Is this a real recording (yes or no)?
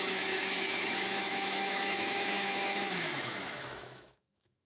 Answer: no